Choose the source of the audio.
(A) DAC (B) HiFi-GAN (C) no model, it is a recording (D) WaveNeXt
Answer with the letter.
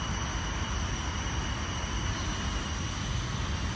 C